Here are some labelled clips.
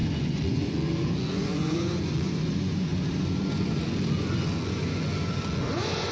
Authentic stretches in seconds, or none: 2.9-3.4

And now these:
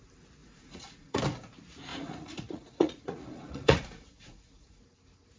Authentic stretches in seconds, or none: 0.0-0.4; 1.2-1.9; 4.8-5.4

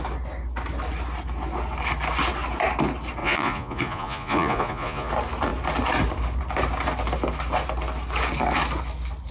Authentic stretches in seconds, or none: 0.0-3.2; 5.1-9.3

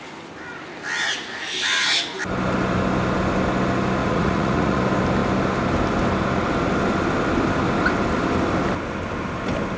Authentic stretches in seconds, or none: 0.0-4.0; 4.8-9.8

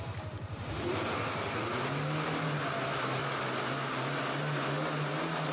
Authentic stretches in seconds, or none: 0.0-5.5

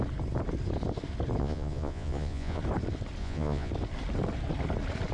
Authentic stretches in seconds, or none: 0.0-1.4; 2.6-3.2; 3.7-5.1

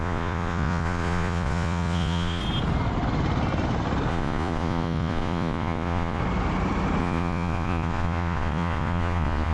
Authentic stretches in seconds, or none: 2.4-4.1; 6.2-7.0

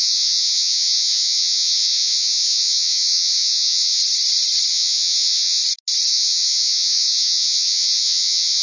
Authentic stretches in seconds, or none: 4.0-4.7; 5.6-6.1